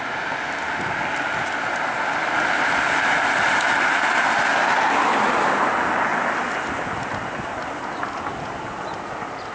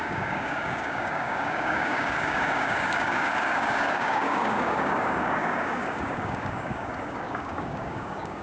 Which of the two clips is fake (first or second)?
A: second